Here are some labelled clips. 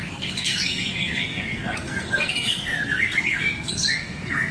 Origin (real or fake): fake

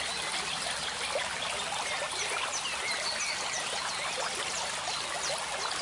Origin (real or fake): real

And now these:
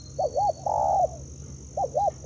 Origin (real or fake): real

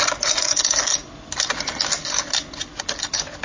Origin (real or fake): real